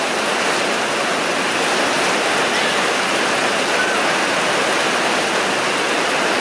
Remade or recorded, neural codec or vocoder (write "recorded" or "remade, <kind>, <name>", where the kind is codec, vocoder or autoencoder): recorded